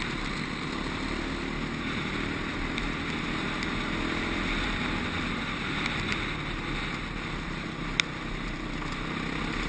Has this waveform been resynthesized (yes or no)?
no